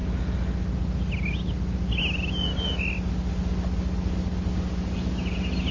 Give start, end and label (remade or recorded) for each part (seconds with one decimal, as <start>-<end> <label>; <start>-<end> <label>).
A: 0.0-5.7 recorded